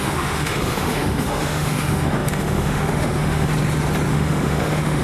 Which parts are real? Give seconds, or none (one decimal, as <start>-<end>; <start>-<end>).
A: 3.5-4.1